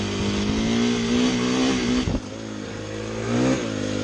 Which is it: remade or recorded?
recorded